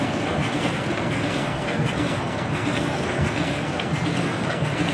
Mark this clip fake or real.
fake